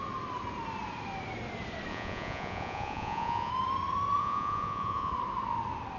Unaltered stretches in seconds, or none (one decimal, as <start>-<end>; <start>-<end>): 0.0-1.9; 3.5-4.2; 5.1-6.0

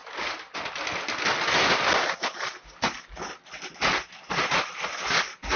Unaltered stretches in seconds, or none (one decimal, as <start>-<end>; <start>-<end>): 0.0-5.6